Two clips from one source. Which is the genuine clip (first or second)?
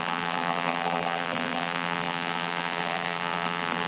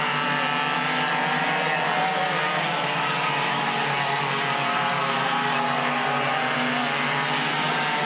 second